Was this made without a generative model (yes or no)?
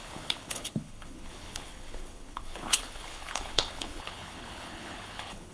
no